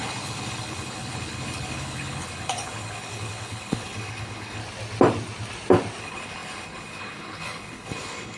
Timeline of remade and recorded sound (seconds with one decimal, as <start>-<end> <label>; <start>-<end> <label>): 0.0-4.6 remade; 4.6-6.0 recorded; 6.0-8.4 remade